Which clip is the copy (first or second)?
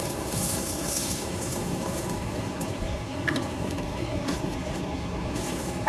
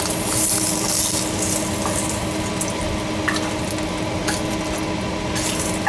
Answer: first